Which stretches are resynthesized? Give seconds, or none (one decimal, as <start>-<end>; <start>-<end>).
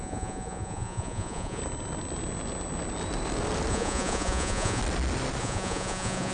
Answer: 0.0-1.6; 3.7-4.8; 5.4-6.3